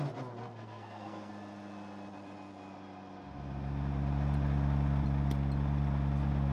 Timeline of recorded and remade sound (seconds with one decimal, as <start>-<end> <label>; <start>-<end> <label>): 0.0-0.4 recorded; 0.4-1.3 remade; 1.3-6.5 recorded